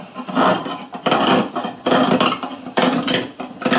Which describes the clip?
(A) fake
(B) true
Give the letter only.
B